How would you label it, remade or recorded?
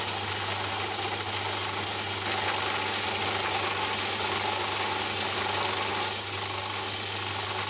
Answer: recorded